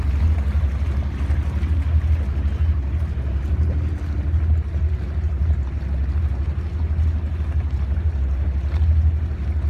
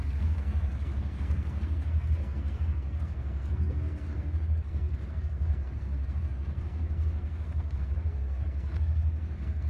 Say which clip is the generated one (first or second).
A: second